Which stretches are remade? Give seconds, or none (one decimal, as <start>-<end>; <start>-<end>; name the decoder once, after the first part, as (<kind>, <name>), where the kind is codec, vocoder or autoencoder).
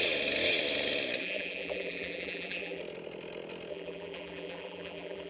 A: 1.2-2.8 (vocoder, BigVGAN v2); 3.7-5.3